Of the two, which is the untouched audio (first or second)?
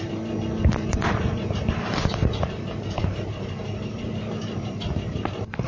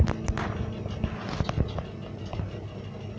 second